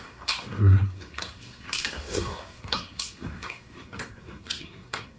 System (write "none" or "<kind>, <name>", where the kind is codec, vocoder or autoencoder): codec, SNAC